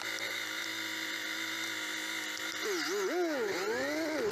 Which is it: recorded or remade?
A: recorded